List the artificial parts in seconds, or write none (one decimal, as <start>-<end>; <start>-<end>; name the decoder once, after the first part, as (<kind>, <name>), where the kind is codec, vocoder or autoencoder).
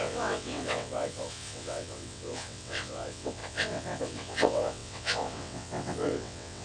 0.0-6.6 (vocoder, WaveNeXt)